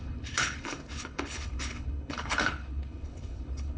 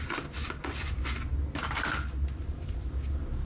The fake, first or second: first